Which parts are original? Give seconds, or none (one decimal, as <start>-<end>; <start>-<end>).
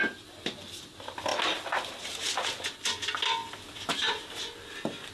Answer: 0.0-5.1